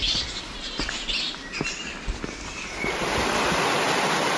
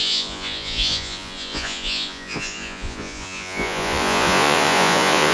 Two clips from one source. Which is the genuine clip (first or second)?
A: first